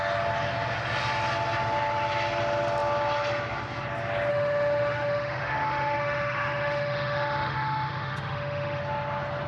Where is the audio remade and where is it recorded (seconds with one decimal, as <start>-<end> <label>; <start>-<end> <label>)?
0.0-4.3 recorded; 4.3-8.8 remade; 8.8-9.5 recorded